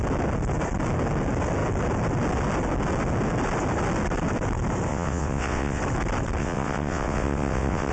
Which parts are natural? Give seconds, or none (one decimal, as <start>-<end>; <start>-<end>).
0.0-4.9; 5.8-6.4